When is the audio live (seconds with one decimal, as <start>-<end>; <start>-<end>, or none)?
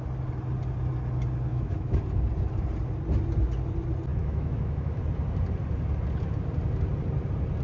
0.0-1.5; 2.0-4.1; 5.0-7.6